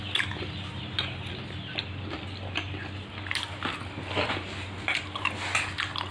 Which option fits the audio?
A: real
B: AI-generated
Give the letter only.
A